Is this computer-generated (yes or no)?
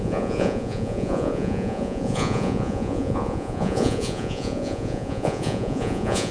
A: yes